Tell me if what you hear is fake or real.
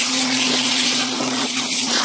fake